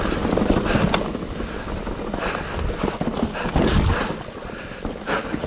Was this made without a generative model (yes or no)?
yes